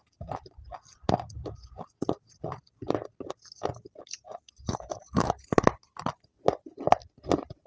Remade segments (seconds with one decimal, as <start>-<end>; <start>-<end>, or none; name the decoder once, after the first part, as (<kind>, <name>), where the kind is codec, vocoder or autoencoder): none